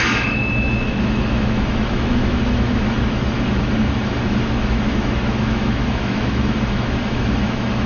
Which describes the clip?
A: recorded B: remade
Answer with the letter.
B